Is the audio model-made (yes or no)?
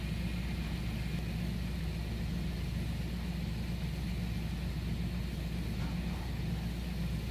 no